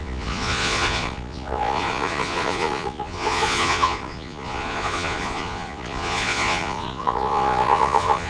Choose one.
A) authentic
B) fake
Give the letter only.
B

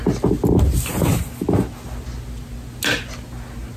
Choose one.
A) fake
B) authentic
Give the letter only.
B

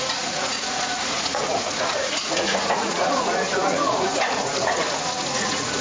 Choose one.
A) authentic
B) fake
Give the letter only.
B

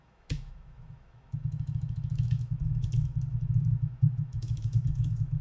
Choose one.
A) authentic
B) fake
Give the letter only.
B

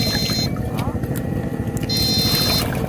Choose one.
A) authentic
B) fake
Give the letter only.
B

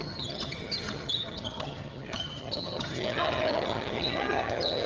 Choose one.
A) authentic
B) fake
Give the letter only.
B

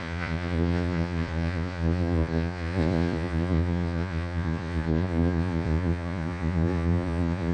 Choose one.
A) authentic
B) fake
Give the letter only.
B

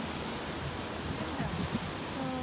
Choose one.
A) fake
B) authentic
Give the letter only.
B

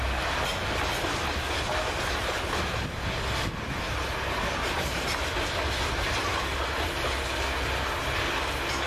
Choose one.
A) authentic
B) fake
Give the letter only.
A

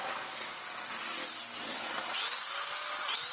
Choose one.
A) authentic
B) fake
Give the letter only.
A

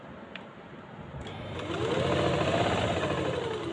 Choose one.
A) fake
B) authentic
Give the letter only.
B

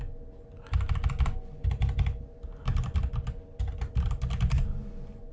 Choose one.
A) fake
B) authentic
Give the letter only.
B